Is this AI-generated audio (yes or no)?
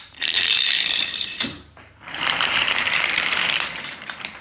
yes